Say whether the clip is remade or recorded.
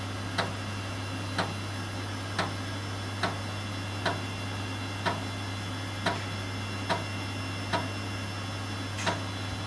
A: recorded